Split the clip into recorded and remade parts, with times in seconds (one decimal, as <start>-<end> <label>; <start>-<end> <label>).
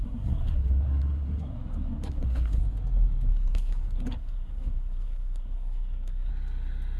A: 0.0-2.6 remade; 2.6-3.3 recorded; 3.3-6.3 remade; 6.3-7.0 recorded